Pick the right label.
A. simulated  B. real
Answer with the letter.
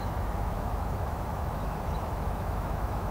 A